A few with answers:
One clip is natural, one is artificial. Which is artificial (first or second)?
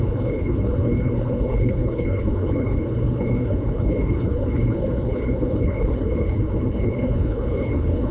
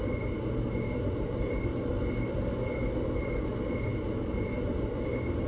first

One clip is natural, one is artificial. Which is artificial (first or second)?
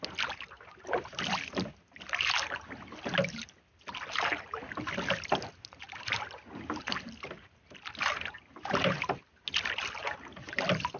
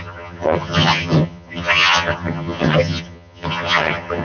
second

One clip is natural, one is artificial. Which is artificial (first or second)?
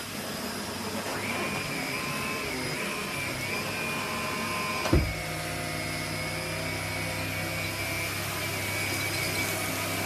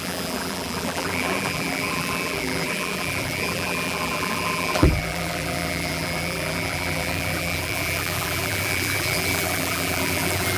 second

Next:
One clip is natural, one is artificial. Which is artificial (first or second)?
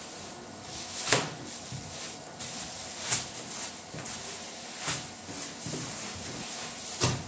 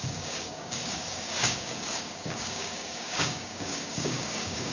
second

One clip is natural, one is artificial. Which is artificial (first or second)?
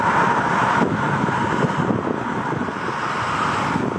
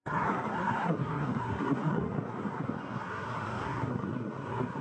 second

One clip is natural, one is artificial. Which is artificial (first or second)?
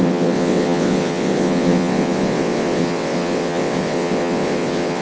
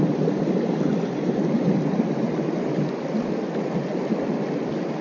first